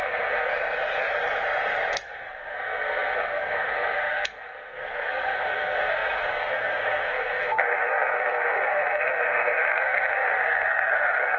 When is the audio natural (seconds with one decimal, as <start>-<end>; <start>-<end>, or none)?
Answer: 0.5-1.9